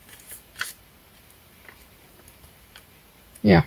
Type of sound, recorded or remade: remade